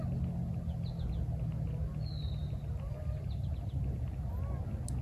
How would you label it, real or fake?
real